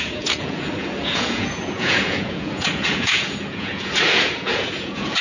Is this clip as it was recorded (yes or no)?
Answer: no